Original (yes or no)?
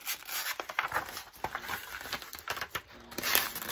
yes